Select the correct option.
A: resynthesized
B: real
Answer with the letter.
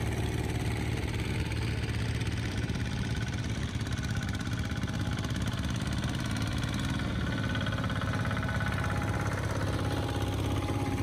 B